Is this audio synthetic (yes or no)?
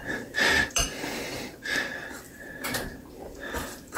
yes